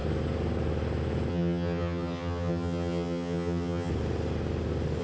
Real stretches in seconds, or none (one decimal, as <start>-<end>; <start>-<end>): 0.0-1.3; 3.9-5.0